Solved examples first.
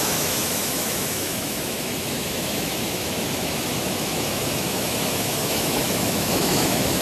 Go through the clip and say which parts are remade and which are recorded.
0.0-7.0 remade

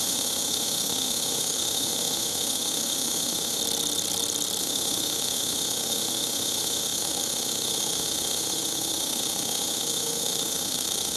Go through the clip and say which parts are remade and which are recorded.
0.0-3.6 remade; 3.6-4.6 recorded; 4.6-11.2 remade

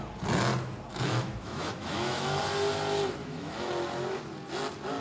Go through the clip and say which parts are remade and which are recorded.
0.0-0.9 recorded; 0.9-2.4 remade; 2.4-3.2 recorded; 3.2-3.7 remade; 3.7-5.0 recorded

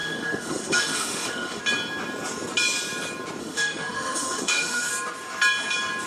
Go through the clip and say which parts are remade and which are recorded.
0.0-1.6 remade; 1.6-3.4 recorded; 3.4-4.9 remade; 4.9-6.1 recorded

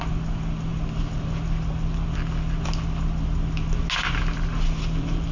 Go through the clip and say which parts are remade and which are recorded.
0.0-5.3 recorded